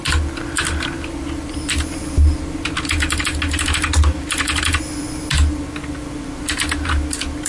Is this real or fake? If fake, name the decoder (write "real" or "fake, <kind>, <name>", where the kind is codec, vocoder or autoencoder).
real